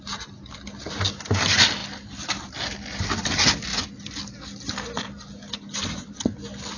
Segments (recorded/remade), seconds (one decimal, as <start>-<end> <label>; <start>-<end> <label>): 0.0-6.8 recorded